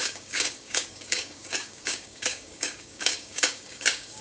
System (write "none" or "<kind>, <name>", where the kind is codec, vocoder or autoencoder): codec, DAC